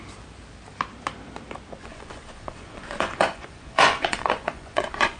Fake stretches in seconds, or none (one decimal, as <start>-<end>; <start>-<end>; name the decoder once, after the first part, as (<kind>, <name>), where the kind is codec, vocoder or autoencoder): 1.8-5.2 (vocoder, Vocos)